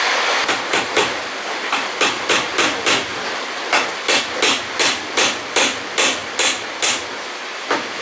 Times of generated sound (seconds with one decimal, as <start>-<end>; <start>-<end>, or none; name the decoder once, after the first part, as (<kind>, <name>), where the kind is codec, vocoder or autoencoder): none